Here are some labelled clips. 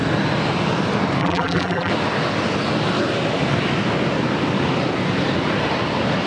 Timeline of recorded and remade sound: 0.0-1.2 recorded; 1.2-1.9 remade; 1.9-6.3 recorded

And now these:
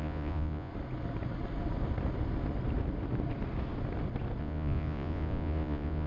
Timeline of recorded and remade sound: 0.0-0.7 remade; 0.7-4.4 recorded; 4.4-6.1 remade

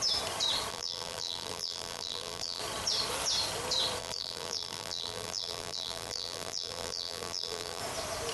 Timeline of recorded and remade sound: 0.0-0.7 recorded; 0.7-2.6 remade; 2.6-4.0 recorded; 4.0-7.8 remade; 7.8-8.3 recorded